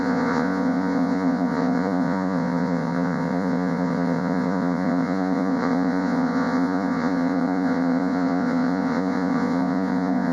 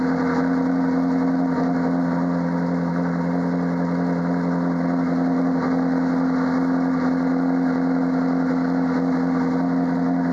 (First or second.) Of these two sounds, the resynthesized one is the first